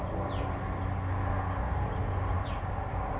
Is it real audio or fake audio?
real